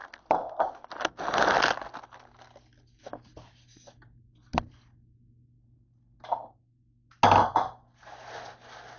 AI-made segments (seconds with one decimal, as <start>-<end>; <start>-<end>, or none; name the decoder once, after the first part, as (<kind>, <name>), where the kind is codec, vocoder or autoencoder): none